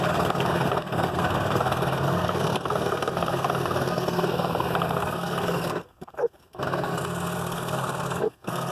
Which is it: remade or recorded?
remade